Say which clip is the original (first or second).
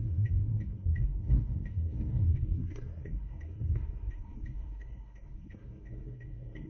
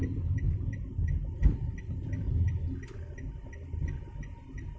second